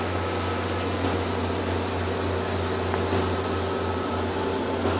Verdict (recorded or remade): recorded